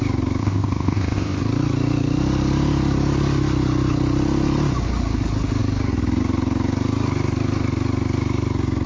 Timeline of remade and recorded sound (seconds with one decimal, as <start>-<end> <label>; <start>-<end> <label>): 0.0-0.4 recorded; 0.4-1.4 remade; 1.4-8.9 recorded